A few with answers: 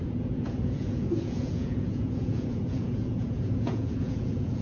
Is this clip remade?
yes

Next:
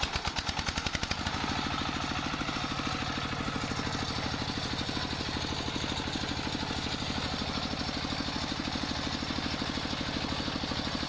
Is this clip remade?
no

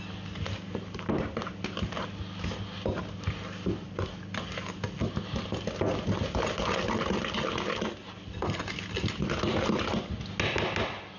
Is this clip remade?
no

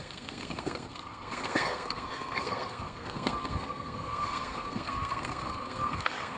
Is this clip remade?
yes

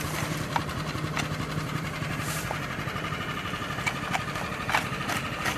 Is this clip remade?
no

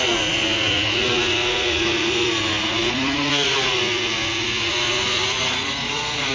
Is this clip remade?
yes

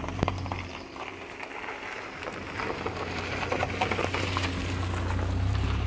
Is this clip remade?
no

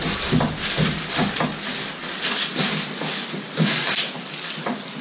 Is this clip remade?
no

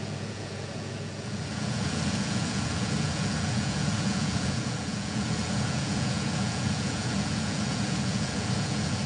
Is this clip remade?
yes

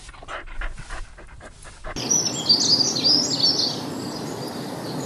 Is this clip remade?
no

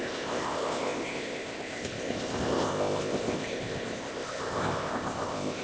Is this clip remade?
yes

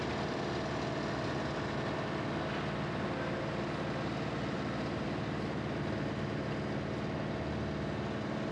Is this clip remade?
no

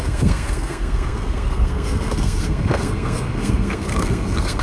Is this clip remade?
yes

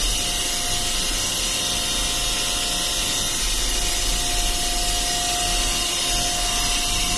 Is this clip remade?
no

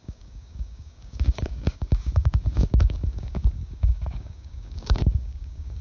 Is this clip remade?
yes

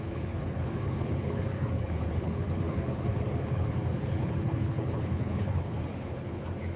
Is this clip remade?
yes